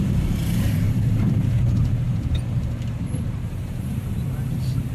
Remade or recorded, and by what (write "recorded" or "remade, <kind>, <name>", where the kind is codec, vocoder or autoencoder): remade, vocoder, BigVGAN v2